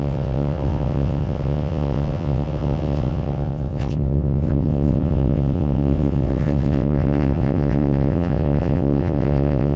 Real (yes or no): no